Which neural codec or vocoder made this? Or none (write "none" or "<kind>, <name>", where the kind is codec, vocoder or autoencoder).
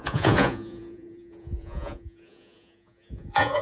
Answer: vocoder, Vocos